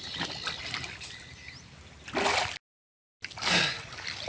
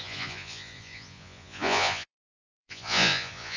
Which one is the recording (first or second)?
first